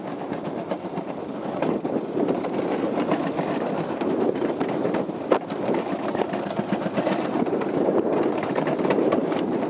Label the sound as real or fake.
fake